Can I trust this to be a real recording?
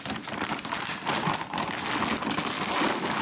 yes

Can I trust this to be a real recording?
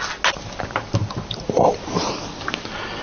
yes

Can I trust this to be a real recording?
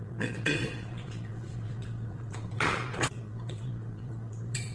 no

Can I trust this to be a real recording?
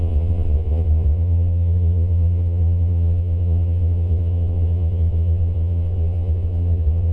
no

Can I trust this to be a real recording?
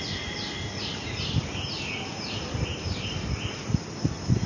yes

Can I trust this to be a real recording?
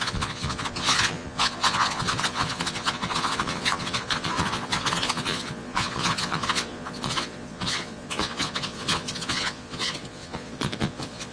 no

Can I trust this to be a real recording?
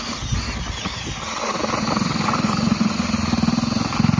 yes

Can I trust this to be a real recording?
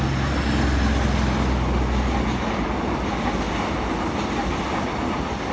yes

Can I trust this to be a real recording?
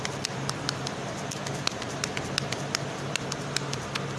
yes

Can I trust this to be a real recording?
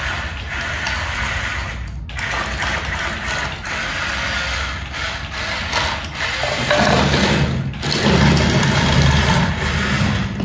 yes